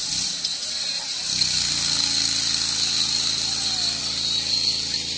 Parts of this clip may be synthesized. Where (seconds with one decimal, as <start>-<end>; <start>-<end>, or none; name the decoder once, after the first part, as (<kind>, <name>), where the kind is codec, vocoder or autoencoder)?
none